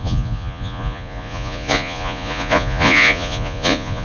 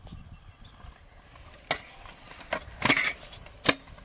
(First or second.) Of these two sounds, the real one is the second